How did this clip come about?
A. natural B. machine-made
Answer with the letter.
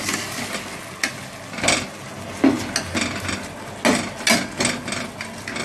A